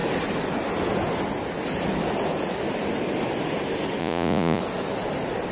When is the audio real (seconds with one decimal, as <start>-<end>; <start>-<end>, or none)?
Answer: 0.0-4.0; 4.6-5.5